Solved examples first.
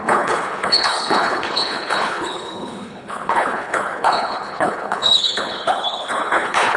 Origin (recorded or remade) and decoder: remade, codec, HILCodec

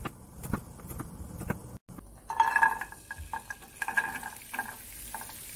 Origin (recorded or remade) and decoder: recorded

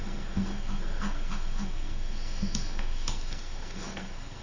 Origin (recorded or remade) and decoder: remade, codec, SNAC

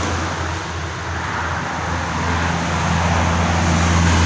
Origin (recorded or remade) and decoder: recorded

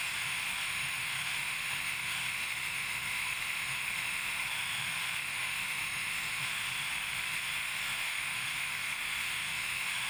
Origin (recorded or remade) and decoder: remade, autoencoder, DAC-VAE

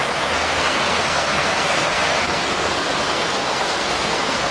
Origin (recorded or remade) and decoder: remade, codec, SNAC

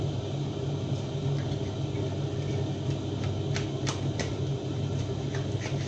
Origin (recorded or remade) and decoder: recorded